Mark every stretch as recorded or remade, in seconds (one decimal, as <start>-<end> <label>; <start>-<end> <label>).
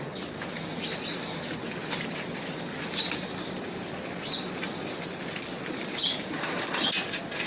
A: 0.0-7.5 recorded